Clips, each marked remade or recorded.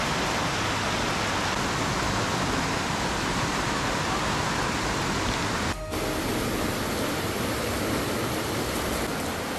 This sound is recorded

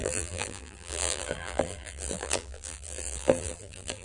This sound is remade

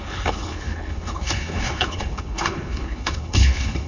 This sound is remade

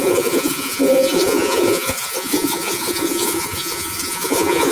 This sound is remade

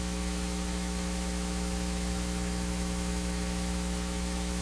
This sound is remade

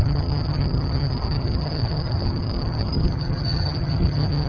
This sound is remade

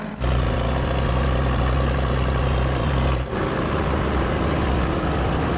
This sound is recorded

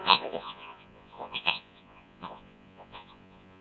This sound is remade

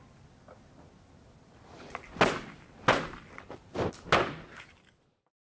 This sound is recorded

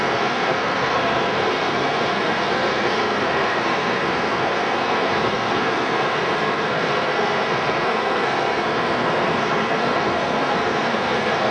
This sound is remade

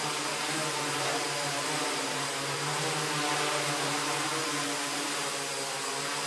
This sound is recorded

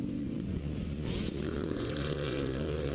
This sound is remade